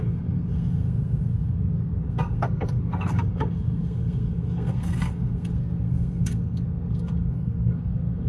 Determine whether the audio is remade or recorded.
remade